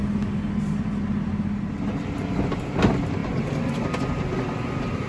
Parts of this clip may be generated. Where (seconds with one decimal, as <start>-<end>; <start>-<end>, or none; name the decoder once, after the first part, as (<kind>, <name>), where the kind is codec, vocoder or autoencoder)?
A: none